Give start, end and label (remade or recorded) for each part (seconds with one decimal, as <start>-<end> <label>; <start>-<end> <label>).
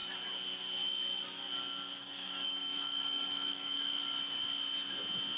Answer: 0.0-2.0 recorded; 2.0-4.0 remade; 4.0-5.4 recorded